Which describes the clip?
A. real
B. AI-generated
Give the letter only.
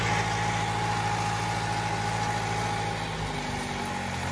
A